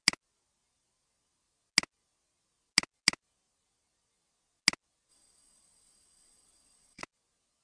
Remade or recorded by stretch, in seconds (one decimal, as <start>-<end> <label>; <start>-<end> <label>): 0.0-5.1 recorded; 5.1-7.0 remade; 7.0-7.6 recorded

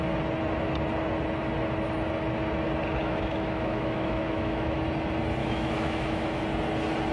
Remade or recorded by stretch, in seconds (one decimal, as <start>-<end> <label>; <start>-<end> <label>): 0.0-3.0 recorded; 3.0-4.8 remade; 4.8-5.4 recorded; 5.4-6.4 remade; 6.4-7.1 recorded

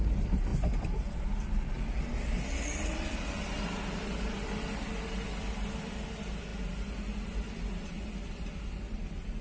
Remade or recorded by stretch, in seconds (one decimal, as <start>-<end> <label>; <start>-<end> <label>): 0.0-9.4 recorded

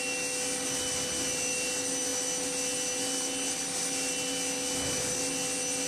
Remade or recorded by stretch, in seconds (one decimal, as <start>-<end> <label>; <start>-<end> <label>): 0.0-5.9 recorded

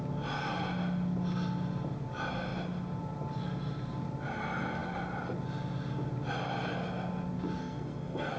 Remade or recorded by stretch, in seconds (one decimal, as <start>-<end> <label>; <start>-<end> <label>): 0.0-7.6 recorded; 7.6-8.4 remade